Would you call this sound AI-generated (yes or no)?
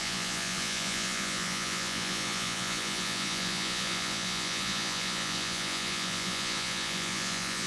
yes